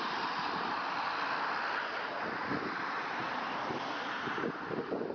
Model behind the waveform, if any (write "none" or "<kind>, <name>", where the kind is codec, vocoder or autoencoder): none